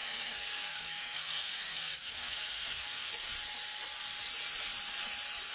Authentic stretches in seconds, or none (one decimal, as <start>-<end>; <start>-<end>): 3.3-5.5